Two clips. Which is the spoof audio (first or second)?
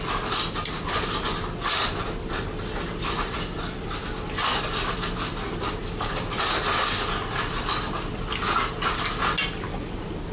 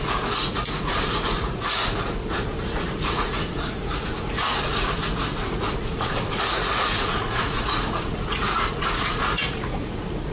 second